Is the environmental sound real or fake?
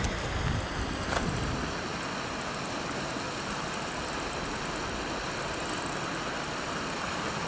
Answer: real